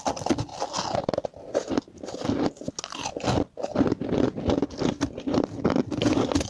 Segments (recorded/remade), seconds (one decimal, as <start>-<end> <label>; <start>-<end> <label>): 0.0-6.5 recorded